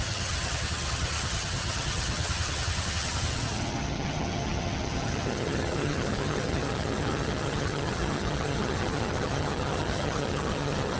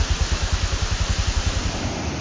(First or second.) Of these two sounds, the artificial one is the first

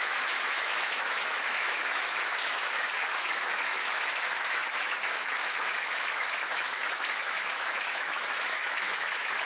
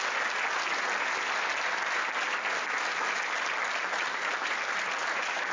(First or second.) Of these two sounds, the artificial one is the first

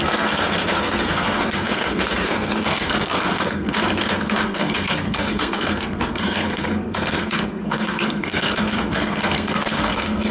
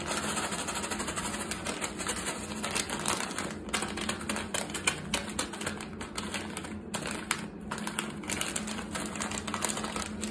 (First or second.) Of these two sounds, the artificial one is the first